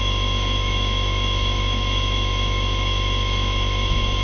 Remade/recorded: remade